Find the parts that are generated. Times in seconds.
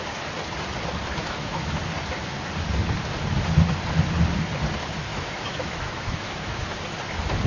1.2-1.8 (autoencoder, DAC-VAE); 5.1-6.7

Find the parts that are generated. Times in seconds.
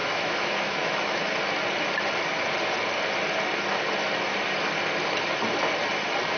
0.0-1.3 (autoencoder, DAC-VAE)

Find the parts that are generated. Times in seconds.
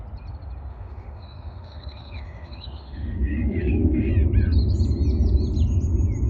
0.7-4.1 (autoencoder, DAC-VAE)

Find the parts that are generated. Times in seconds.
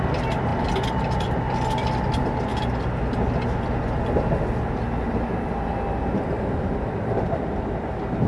none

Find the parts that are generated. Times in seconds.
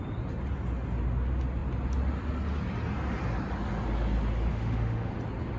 4.5-5.1 (autoencoder, DAC-VAE)